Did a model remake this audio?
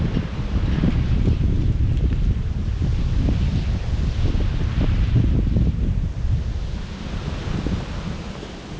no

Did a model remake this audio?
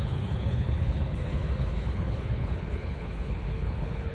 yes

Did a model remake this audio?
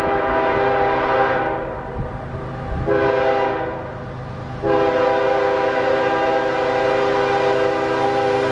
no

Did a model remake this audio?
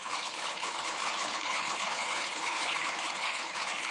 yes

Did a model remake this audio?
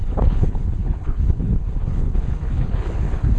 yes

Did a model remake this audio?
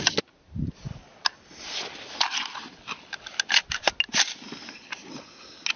no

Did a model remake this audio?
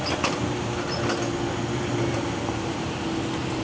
no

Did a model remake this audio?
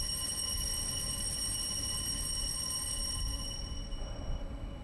no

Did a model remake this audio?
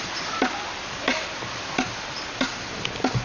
no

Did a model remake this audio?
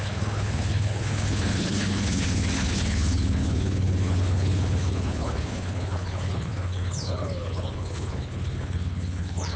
yes